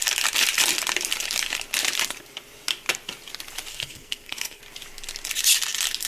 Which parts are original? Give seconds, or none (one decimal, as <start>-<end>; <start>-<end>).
0.0-3.7; 4.6-6.1